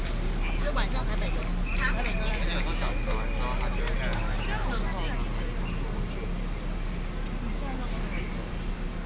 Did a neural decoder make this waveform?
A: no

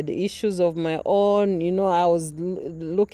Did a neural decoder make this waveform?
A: no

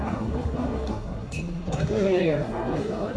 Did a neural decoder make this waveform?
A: yes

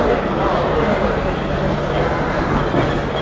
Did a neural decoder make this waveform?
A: no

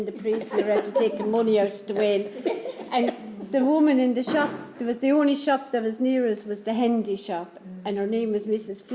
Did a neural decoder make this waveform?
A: no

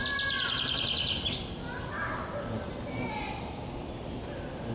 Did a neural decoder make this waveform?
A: no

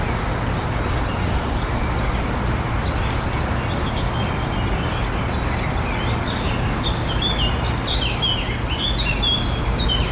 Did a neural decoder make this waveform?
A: no